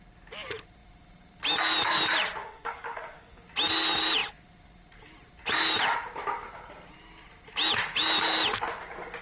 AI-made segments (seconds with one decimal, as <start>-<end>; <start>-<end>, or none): 2.4-3.4